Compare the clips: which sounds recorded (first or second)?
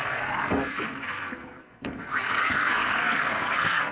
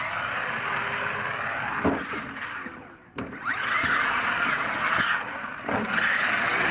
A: second